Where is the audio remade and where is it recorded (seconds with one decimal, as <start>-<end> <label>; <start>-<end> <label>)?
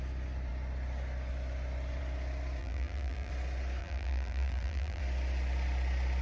0.0-2.6 recorded; 2.6-3.3 remade; 3.3-3.8 recorded; 3.8-5.0 remade; 5.0-6.2 recorded